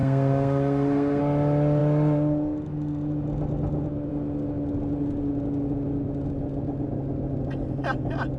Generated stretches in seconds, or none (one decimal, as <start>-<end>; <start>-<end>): 0.0-1.2